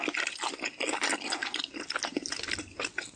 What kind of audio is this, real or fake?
real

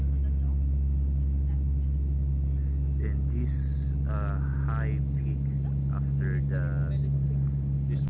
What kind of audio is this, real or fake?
real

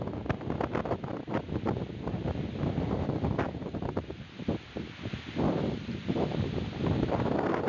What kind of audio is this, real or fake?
real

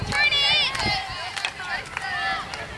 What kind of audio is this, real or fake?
real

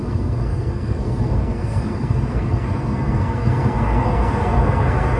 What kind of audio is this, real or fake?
fake